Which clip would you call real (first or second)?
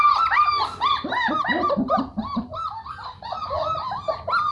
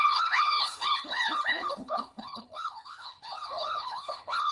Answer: first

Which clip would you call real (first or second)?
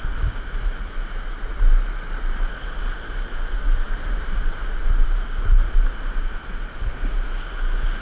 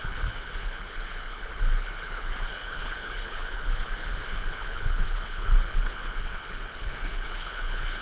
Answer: first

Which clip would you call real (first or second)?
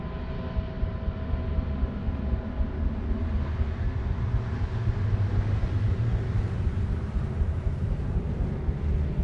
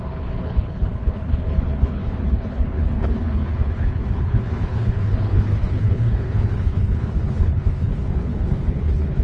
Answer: first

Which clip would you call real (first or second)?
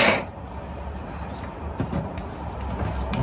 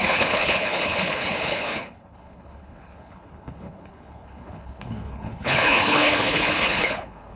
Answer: first